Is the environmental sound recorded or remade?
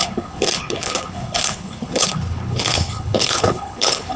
remade